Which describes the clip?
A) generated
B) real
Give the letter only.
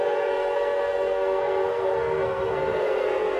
A